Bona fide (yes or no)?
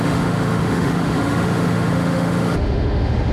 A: no